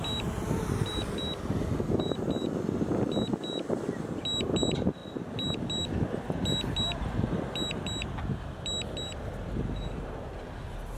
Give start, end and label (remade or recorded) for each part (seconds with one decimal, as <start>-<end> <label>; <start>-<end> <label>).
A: 0.0-11.0 recorded